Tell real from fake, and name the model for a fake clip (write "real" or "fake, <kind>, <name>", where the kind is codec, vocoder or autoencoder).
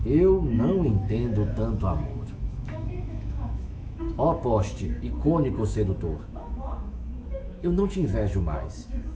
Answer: fake, autoencoder, DAC-VAE